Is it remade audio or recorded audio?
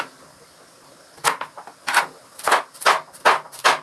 recorded